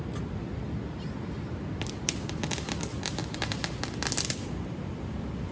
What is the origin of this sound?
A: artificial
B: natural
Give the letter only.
B